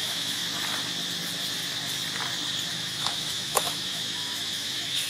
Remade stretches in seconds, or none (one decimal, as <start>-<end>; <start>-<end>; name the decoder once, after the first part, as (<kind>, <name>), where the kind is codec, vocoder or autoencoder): 0.0-0.4 (autoencoder, DAC-VAE); 2.7-5.1